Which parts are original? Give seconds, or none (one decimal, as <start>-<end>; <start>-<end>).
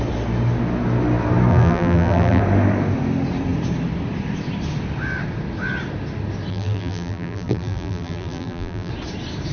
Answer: 0.0-1.5; 2.4-6.5; 8.9-9.5